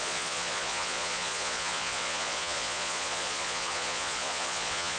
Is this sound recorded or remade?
remade